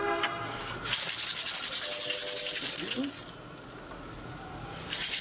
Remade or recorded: recorded